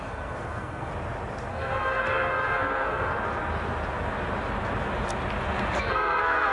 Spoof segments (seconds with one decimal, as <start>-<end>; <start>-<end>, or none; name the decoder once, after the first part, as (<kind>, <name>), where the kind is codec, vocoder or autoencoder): 0.0-0.9 (codec, SNAC); 1.5-3.1; 5.8-6.5